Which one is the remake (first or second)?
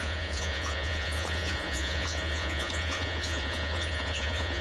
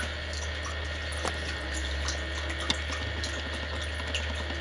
first